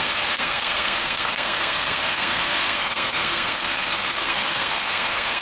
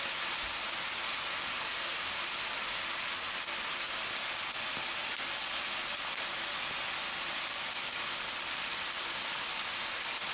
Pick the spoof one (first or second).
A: first